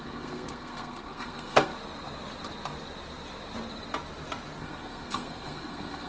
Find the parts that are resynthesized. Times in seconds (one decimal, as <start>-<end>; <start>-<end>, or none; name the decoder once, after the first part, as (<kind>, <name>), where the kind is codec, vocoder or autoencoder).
0.0-1.7 (codec, SNAC); 4.6-6.1